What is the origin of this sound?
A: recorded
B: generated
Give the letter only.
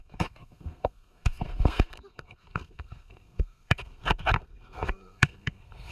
B